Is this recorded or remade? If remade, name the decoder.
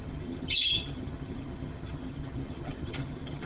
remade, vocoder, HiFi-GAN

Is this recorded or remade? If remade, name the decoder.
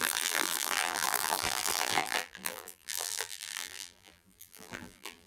remade, vocoder, BigVGAN v2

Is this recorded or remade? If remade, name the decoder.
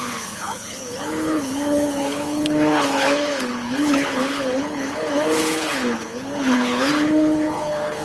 remade, codec, HILCodec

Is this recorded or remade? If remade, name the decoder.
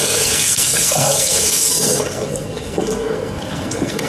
remade, codec, SNAC